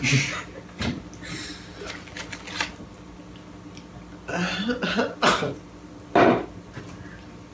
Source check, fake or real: real